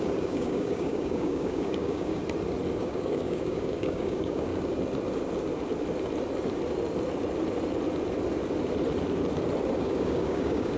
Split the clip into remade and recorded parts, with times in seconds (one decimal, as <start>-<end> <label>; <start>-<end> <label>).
0.0-2.2 remade; 2.2-2.8 recorded; 2.8-4.5 remade; 4.5-9.8 recorded; 9.8-10.8 remade